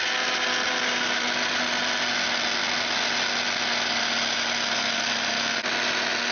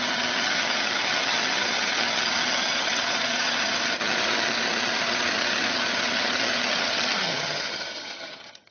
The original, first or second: first